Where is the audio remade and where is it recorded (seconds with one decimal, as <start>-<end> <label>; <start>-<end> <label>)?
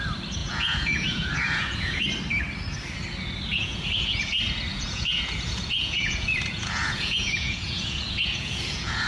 0.0-0.4 recorded; 0.4-2.0 remade; 2.0-3.5 recorded; 3.5-4.3 remade; 4.3-4.7 recorded; 4.7-9.1 remade